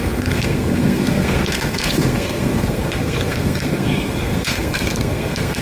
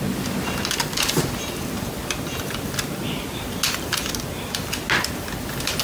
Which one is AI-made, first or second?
first